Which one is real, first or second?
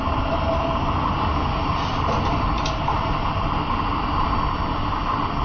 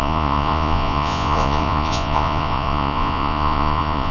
first